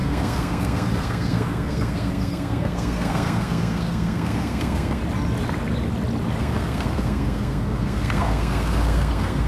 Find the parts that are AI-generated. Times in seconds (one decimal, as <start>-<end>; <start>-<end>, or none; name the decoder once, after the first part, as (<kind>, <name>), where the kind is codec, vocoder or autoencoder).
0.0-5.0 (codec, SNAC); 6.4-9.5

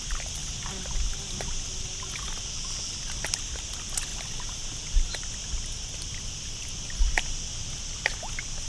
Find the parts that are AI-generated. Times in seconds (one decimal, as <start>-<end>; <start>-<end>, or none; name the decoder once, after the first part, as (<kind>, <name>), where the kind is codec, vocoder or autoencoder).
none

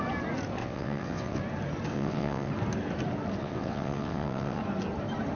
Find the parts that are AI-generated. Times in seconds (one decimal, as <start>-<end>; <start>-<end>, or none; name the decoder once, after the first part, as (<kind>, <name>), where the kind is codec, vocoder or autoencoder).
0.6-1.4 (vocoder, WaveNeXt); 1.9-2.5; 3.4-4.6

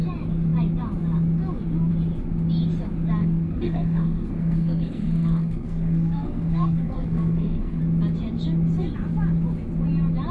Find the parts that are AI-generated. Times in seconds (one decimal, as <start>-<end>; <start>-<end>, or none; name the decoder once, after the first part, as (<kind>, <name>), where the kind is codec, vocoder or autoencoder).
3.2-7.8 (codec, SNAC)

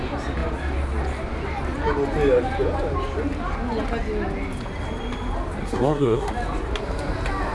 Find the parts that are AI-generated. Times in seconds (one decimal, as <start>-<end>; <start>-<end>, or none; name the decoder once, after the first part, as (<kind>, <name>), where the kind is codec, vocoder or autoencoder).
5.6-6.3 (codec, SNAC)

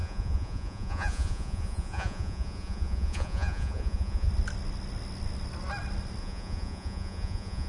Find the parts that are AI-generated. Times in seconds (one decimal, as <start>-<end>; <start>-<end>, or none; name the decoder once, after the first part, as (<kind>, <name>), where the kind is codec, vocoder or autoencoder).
0.0-4.3 (vocoder, Vocos); 6.2-7.7